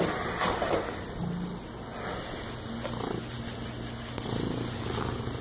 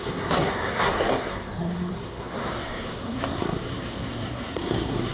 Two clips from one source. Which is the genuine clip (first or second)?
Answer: first